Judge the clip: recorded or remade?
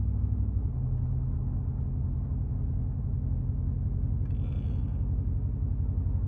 recorded